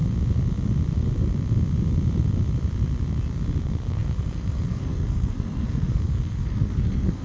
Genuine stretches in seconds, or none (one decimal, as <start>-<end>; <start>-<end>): 0.0-3.6